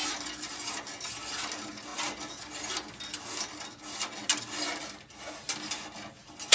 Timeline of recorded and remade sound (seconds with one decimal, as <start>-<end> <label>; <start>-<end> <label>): 0.0-6.5 recorded